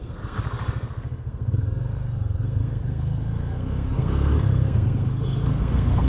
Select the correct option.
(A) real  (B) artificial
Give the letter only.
B